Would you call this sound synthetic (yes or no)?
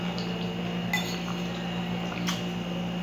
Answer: no